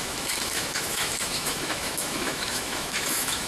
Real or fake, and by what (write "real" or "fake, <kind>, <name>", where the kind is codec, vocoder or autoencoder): fake, autoencoder, DAC-VAE